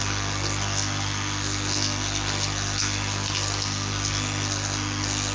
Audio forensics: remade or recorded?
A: remade